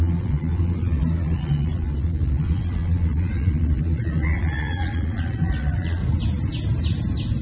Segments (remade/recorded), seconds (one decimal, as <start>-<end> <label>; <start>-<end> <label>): 0.0-6.0 remade; 6.0-7.4 recorded